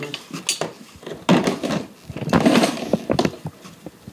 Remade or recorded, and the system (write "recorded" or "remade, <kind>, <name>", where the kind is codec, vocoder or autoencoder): recorded